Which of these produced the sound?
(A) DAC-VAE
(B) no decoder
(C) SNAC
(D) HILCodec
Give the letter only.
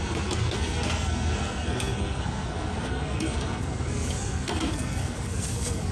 C